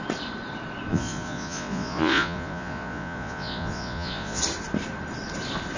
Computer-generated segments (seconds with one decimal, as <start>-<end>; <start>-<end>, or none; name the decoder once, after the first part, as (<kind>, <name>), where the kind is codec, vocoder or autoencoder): 0.9-4.4 (vocoder, Vocos)